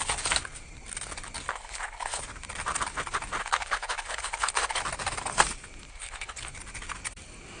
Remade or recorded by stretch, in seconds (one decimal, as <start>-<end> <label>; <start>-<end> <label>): 0.0-1.5 recorded; 1.5-2.2 remade; 2.2-3.4 recorded; 3.4-4.8 remade; 4.8-5.9 recorded; 5.9-6.4 remade; 6.4-7.6 recorded